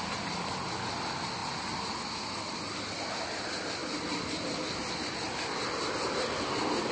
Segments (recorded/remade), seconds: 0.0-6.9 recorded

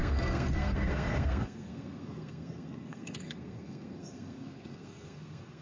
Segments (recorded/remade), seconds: 0.0-5.6 remade

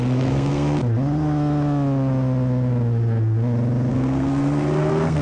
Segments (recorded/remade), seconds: 0.0-0.8 remade; 0.8-3.9 recorded; 3.9-5.2 remade